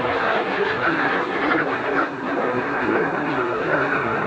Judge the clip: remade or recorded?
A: remade